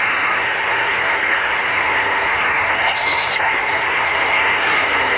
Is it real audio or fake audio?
fake